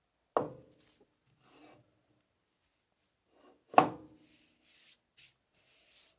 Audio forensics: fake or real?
real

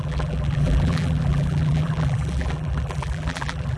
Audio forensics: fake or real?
fake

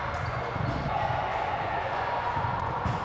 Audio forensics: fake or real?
fake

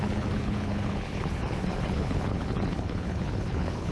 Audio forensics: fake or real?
fake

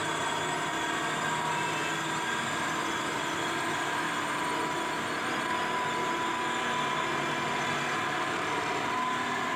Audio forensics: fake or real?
real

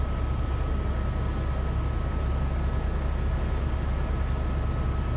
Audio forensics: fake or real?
real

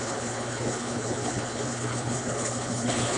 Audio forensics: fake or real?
fake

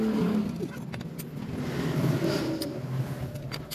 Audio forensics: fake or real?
real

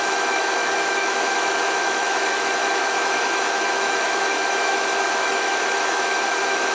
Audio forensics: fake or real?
fake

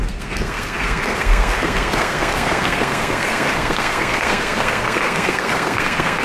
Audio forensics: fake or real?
fake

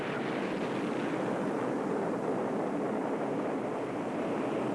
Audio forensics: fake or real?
real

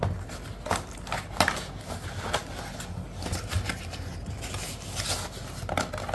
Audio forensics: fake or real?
real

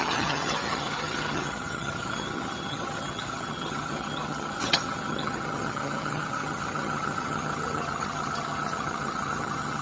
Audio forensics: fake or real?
fake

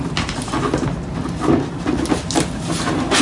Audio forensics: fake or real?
real